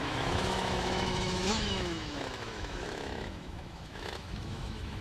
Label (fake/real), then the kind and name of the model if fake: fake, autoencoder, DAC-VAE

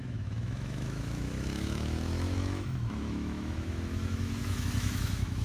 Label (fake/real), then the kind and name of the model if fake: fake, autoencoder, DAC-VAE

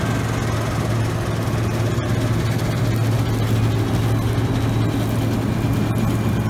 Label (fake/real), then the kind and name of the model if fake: real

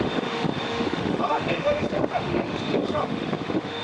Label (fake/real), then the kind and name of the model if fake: fake, autoencoder, DAC-VAE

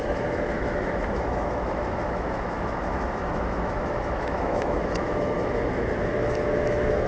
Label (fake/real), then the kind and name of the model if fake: fake, autoencoder, DAC-VAE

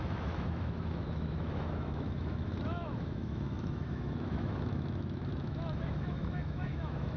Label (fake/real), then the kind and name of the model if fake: fake, autoencoder, DAC-VAE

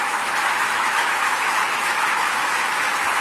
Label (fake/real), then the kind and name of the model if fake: fake, autoencoder, DAC-VAE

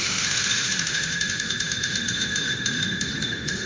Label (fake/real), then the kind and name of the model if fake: fake, autoencoder, DAC-VAE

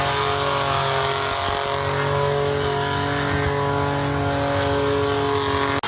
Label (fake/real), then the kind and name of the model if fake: real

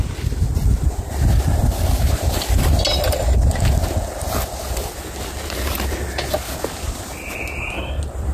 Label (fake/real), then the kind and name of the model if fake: real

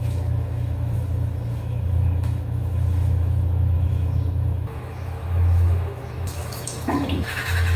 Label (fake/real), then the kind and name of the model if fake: fake, autoencoder, DAC-VAE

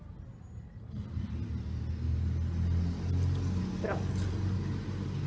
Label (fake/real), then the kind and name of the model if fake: real